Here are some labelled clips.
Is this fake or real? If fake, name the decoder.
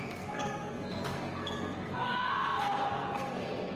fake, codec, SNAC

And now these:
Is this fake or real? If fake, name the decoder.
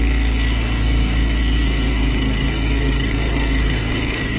fake, codec, SNAC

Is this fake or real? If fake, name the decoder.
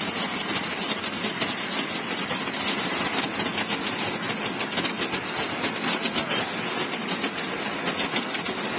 real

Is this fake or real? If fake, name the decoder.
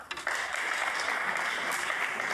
real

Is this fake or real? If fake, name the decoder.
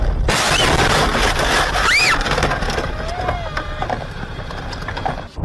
real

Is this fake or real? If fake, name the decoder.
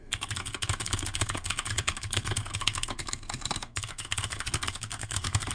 fake, codec, SNAC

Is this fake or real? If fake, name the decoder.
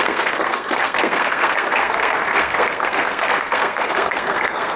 fake, codec, SNAC